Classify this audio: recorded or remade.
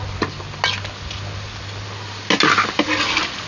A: recorded